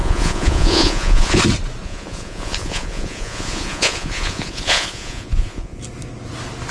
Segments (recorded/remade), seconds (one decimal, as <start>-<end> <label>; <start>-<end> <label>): 0.0-1.4 remade; 1.4-1.8 recorded; 1.8-5.8 remade; 5.8-6.7 recorded